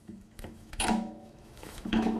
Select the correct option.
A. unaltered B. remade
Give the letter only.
B